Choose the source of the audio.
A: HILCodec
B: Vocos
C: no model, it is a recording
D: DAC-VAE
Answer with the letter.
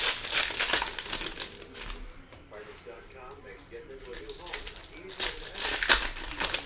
C